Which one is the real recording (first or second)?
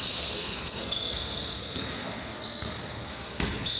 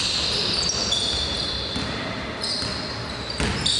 second